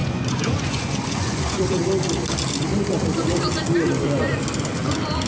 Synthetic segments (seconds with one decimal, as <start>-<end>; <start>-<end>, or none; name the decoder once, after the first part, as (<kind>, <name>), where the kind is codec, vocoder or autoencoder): 0.0-1.8 (vocoder, Vocos)